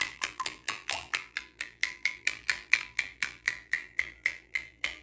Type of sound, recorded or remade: remade